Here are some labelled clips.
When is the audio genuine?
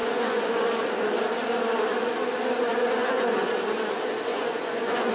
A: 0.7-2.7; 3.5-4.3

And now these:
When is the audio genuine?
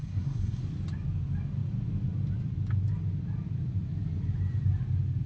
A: 0.6-5.3